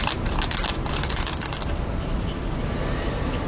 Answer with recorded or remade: recorded